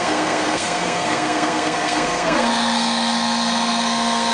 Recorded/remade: remade